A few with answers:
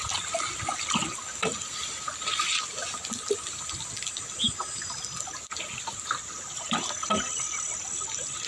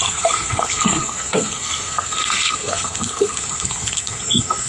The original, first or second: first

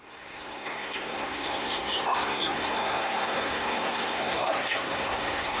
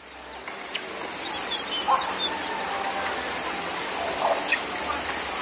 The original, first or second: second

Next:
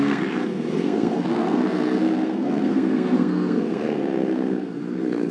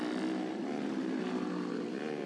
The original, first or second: second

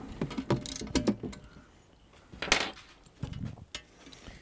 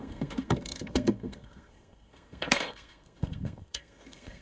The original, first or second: first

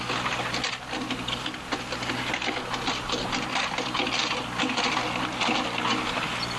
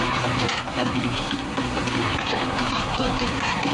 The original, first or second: first